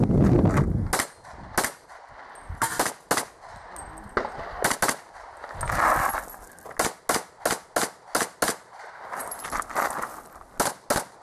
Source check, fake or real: real